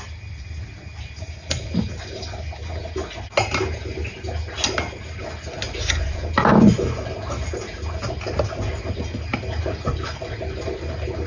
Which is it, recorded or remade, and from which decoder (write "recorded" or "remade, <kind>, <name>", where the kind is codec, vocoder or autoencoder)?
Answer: recorded